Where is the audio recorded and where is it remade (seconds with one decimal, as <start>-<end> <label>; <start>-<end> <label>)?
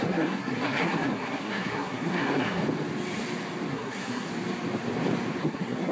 0.0-2.6 remade; 2.6-3.7 recorded; 3.7-4.3 remade; 4.3-5.4 recorded; 5.4-5.9 remade